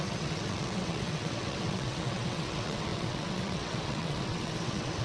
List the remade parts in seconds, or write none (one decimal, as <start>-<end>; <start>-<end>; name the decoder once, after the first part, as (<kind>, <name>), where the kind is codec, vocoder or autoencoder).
0.0-5.0 (vocoder, WaveNeXt)